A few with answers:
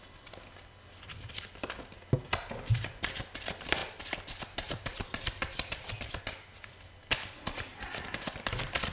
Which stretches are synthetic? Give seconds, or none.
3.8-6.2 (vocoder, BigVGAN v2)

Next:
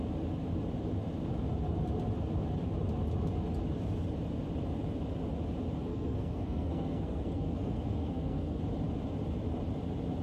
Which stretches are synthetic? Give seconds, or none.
5.9-8.6 (codec, SNAC)

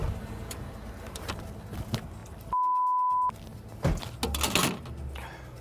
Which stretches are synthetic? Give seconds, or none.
0.0-1.2 (vocoder, BigVGAN v2)

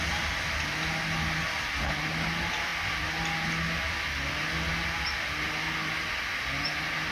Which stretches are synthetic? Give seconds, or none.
none

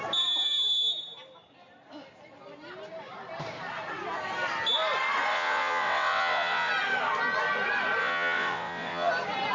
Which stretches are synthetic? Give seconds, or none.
5.3-6.7 (vocoder, WaveNeXt); 8.0-9.1

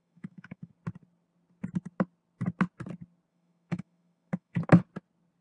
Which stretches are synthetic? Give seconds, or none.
0.0-0.7 (autoencoder, DAC-VAE); 3.3-4.6

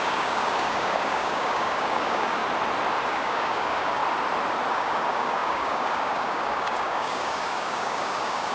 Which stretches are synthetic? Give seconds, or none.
0.0-2.4 (codec, DAC); 3.1-4.0; 4.7-8.5